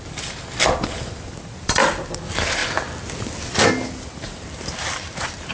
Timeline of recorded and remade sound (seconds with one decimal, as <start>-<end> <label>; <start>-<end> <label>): 0.0-5.5 recorded